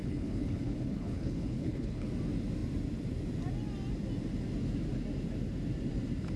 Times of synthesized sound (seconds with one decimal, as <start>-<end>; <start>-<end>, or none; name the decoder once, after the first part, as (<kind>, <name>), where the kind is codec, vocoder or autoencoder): 0.0-2.1 (codec, HILCodec)